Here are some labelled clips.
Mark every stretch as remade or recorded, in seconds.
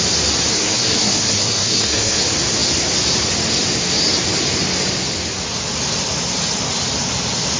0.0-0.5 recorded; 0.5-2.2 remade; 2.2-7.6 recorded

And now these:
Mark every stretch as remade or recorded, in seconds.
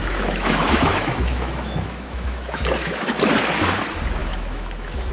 0.0-3.1 remade; 3.1-4.2 recorded; 4.2-5.1 remade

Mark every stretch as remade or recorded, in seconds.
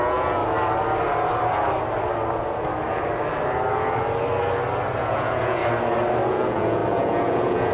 0.0-0.4 remade; 0.4-5.0 recorded; 5.0-5.6 remade; 5.6-6.3 recorded; 6.3-7.7 remade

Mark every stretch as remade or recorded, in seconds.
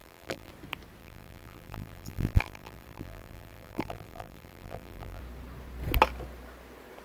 0.0-0.5 remade; 0.5-1.0 recorded; 1.0-5.2 remade; 5.2-7.0 recorded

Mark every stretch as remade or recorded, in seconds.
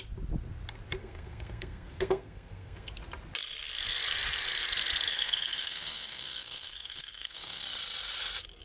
0.0-1.0 recorded; 1.0-2.9 remade; 2.9-5.1 recorded; 5.1-7.6 remade; 7.6-8.6 recorded